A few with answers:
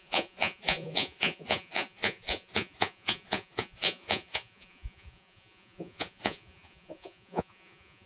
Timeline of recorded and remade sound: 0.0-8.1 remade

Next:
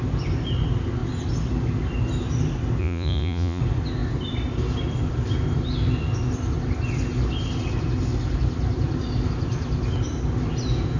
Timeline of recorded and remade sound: 0.0-2.8 recorded; 2.8-3.6 remade; 3.6-11.0 recorded

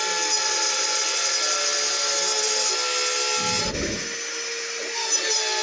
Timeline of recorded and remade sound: 0.0-0.4 recorded; 0.4-1.3 remade; 1.3-5.6 recorded

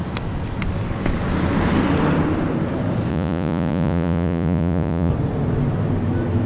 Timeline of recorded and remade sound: 0.0-3.1 recorded; 3.1-5.1 remade; 5.1-6.5 recorded

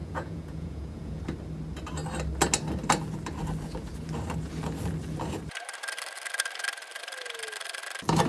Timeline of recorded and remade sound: 0.0-1.2 remade; 1.2-8.3 recorded